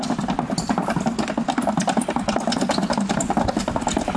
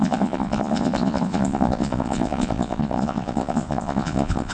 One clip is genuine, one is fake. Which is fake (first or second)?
second